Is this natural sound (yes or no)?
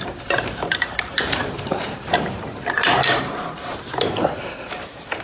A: no